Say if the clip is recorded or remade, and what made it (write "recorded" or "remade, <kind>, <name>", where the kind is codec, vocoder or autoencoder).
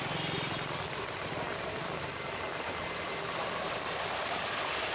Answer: recorded